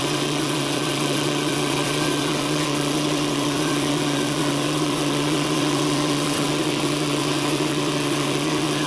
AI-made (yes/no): yes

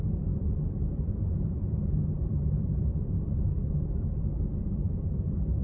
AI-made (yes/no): yes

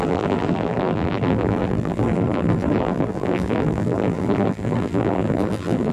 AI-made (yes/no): yes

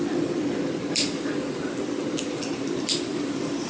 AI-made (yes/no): yes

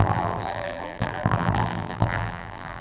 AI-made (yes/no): yes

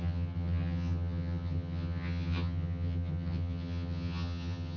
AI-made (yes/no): yes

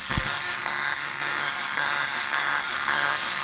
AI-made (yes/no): yes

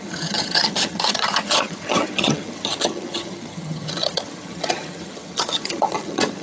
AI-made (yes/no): yes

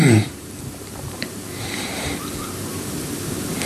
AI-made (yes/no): yes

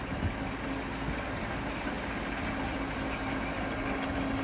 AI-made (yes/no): no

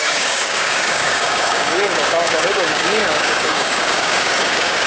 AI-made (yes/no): yes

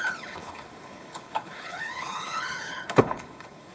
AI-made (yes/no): yes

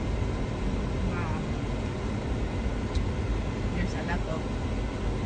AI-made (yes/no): no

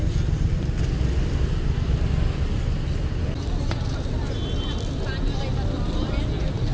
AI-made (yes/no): no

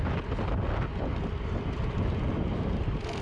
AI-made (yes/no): no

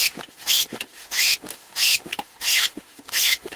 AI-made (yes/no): yes